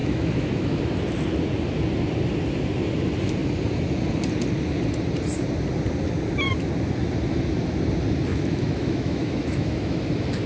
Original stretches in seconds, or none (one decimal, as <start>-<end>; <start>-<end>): 0.8-8.3; 10.0-10.5